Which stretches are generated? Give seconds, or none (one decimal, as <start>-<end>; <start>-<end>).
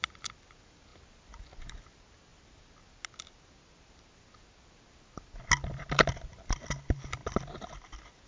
none